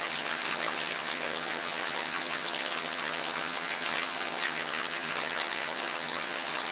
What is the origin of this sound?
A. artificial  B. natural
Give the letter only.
A